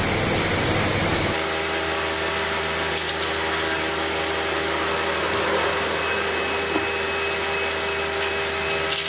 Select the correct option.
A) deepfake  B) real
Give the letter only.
A